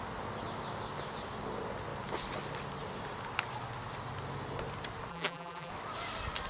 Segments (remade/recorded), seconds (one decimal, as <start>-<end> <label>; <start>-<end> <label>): 0.0-5.1 recorded; 5.1-5.7 remade; 5.7-6.5 recorded